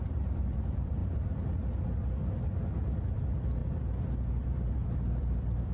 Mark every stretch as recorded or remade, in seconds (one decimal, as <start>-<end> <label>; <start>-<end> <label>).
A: 0.0-1.0 remade; 1.0-2.7 recorded; 2.7-3.6 remade; 3.6-4.3 recorded; 4.3-5.7 remade